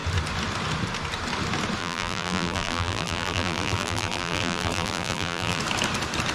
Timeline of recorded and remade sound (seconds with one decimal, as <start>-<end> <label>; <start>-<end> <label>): 0.0-1.8 recorded; 1.8-5.6 remade; 5.6-6.3 recorded